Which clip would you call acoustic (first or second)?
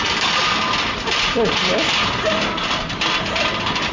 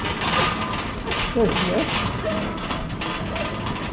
second